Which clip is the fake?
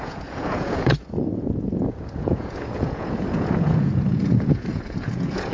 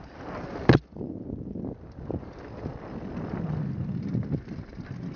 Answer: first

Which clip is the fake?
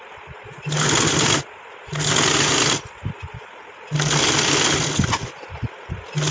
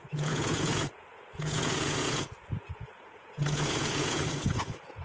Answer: second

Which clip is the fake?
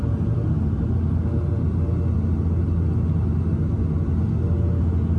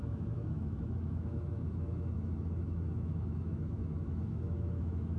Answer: second